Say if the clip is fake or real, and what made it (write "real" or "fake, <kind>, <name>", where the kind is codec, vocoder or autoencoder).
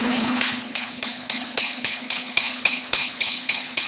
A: fake, codec, HILCodec